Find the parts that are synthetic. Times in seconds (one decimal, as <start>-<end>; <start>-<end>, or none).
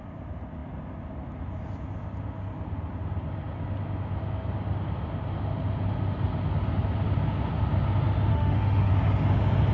8.3-8.9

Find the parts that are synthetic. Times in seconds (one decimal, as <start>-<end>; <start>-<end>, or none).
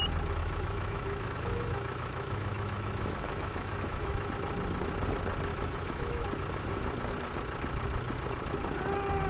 0.4-4.3; 5.5-6.2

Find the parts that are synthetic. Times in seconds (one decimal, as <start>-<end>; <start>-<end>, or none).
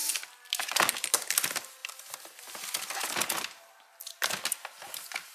none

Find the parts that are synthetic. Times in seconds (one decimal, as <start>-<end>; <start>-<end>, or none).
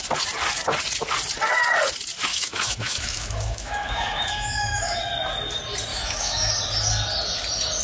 2.3-5.0; 5.9-6.5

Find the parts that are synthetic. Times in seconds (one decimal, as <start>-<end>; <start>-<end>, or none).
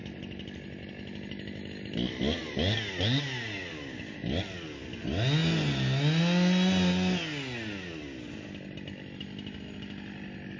none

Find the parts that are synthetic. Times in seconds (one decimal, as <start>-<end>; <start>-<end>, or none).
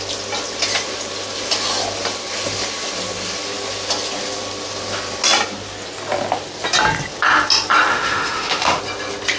7.9-8.8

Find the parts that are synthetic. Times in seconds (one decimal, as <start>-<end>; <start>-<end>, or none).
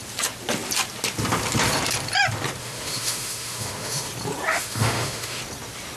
2.6-4.1; 4.5-5.4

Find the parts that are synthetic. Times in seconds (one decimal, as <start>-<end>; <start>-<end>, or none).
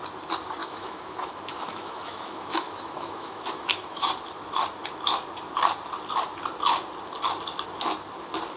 0.6-4.1